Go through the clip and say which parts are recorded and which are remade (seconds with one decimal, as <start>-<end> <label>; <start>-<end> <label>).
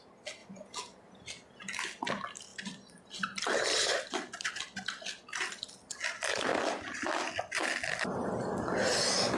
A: 0.0-2.5 recorded; 2.5-4.5 remade; 4.5-9.4 recorded